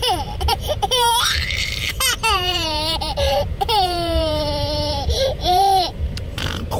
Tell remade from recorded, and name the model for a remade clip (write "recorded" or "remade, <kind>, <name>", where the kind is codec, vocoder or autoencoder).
remade, vocoder, BigVGAN v2